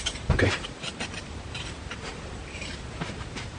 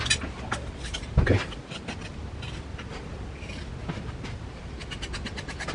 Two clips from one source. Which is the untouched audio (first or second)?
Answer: second